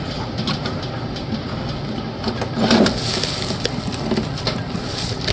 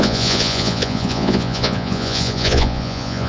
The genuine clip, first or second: first